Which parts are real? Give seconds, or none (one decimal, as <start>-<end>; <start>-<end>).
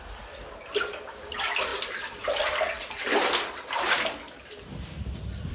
0.0-5.5